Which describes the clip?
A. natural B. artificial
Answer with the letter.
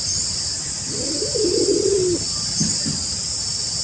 A